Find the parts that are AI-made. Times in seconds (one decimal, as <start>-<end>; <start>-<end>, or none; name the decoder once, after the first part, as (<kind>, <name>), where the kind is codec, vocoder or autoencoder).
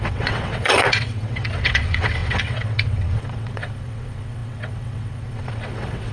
0.0-6.1 (vocoder, WaveNeXt)